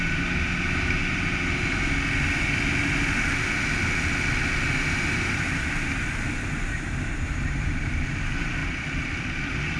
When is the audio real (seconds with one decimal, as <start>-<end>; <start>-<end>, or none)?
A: 1.0-4.7; 8.6-9.4